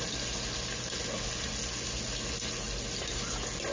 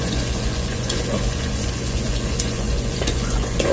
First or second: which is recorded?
first